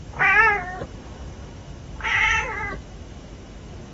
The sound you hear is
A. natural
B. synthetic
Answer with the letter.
B